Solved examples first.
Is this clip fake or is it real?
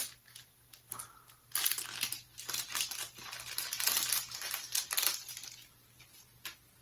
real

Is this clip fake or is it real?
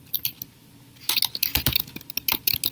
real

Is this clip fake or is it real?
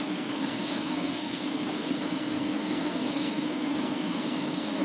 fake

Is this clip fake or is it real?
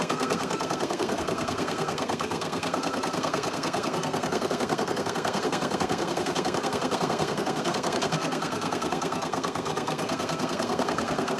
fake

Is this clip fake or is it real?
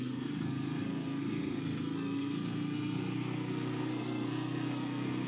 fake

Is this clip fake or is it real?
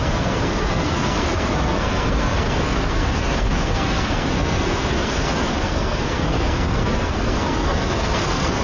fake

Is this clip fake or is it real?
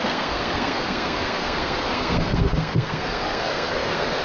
fake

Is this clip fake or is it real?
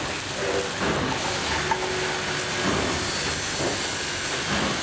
real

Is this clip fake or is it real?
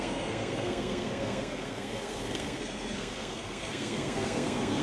fake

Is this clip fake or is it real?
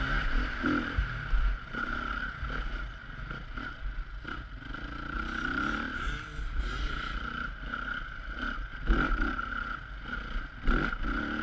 real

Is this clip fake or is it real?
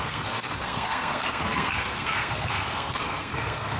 fake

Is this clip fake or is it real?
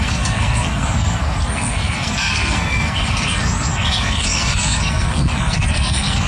fake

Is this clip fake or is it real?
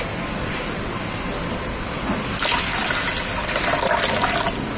real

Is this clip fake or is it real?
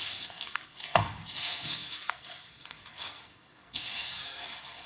fake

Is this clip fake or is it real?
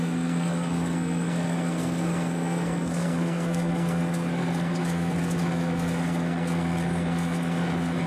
fake